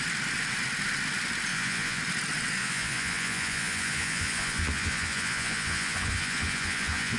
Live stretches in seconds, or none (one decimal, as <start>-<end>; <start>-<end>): 0.0-1.5; 2.0-2.6